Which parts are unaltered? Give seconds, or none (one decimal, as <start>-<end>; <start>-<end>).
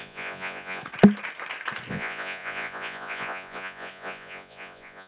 0.8-1.9